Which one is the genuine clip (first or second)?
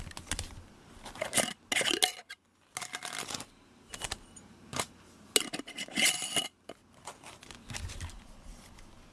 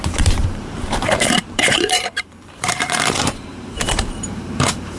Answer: first